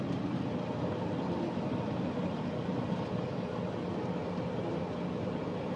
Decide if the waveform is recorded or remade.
recorded